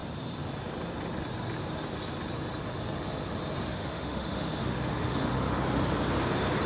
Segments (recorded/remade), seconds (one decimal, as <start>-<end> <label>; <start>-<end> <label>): 0.0-3.7 recorded; 3.7-5.6 remade; 5.6-6.7 recorded